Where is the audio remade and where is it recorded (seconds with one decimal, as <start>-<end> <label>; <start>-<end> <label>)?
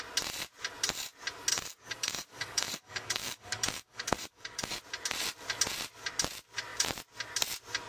0.0-1.5 recorded; 1.5-4.8 remade; 4.8-7.9 recorded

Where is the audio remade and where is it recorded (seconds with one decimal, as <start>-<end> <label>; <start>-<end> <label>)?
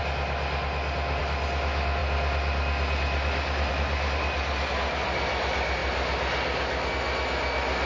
0.0-7.9 recorded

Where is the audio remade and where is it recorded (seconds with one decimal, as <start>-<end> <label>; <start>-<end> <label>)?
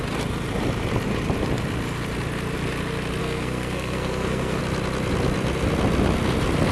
0.0-3.2 recorded; 3.2-4.6 remade; 4.6-6.7 recorded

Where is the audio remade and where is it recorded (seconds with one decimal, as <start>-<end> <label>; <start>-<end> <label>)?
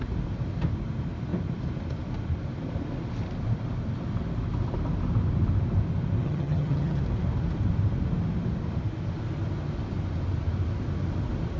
0.0-6.2 recorded; 6.2-7.0 remade; 7.0-11.6 recorded